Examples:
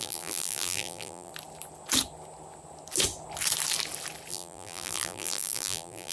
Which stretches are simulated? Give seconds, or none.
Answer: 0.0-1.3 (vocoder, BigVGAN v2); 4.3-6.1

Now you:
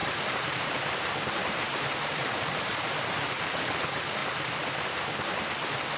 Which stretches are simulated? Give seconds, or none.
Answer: 0.0-3.6 (vocoder, BigVGAN v2)

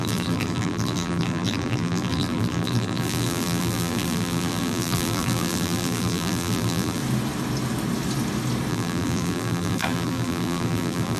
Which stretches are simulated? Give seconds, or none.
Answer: 0.0-7.0 (vocoder, BigVGAN v2); 8.7-11.2

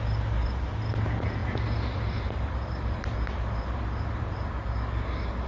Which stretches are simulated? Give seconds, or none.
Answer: 1.4-4.7 (vocoder, BigVGAN v2)

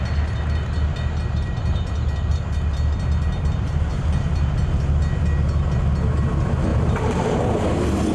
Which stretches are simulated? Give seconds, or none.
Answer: 0.9-1.7 (vocoder, BigVGAN v2); 3.9-4.5; 6.7-7.4